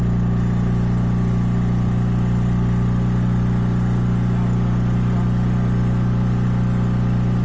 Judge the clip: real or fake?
real